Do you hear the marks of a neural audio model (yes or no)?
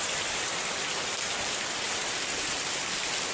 no